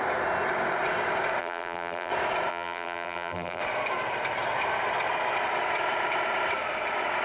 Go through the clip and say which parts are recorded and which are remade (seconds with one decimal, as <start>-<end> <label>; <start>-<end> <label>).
0.0-1.4 recorded; 1.4-2.1 remade; 2.1-2.5 recorded; 2.5-3.6 remade; 3.6-7.2 recorded